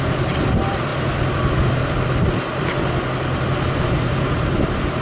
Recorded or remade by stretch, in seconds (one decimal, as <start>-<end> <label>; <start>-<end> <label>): 0.0-0.9 remade; 0.9-3.9 recorded; 3.9-5.0 remade